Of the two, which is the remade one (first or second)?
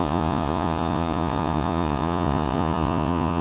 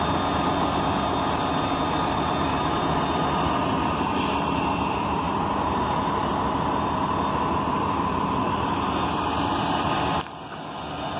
first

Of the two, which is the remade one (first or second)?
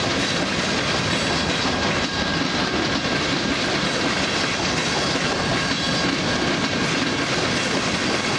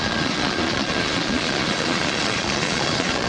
second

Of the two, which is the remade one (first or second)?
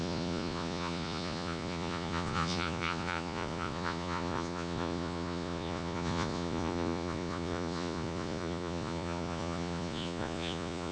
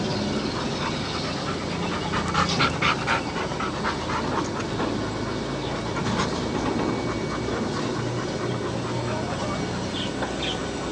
first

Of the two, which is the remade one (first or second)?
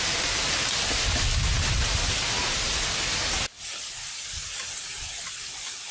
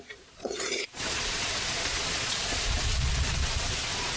second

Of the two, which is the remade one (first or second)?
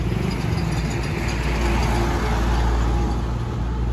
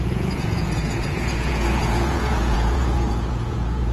second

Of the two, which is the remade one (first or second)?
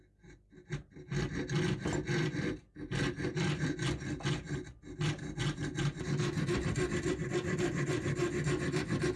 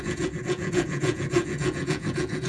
second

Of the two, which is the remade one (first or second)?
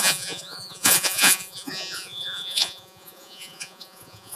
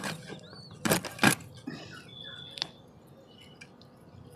first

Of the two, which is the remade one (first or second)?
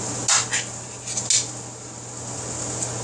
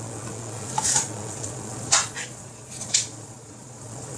second